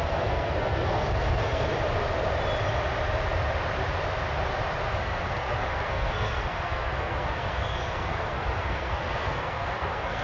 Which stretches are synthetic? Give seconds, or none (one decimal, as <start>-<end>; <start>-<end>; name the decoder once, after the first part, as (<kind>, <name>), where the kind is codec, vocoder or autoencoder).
0.0-1.7 (codec, SNAC); 5.0-10.2